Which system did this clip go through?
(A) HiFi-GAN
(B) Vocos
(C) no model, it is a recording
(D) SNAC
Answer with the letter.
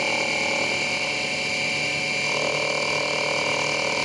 C